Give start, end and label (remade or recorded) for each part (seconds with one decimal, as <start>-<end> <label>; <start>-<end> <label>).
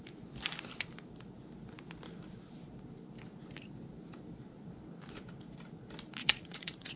0.0-6.2 recorded; 6.2-7.0 remade